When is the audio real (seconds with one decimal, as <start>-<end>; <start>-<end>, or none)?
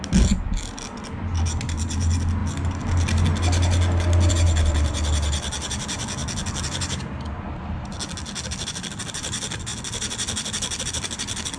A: 0.0-11.6